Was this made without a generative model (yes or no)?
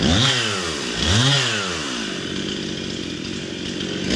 yes